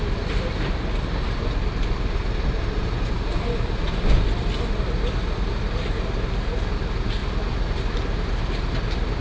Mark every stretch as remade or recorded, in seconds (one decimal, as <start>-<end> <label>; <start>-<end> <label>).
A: 0.0-9.2 recorded